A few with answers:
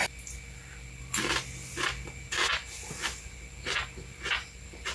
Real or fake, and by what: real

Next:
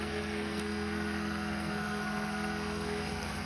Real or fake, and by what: fake, codec, SNAC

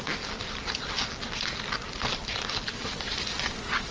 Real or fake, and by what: real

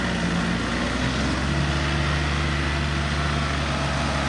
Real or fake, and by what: real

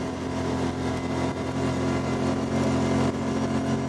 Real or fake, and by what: real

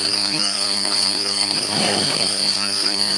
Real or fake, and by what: fake, codec, SNAC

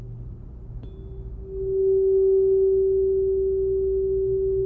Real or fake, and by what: real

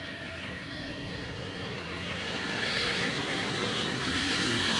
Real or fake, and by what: fake, codec, SNAC